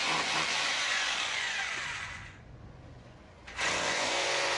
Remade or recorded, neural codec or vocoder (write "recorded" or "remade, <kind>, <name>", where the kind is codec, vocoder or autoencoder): remade, vocoder, Vocos